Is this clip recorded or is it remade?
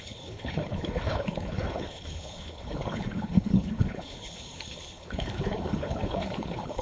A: remade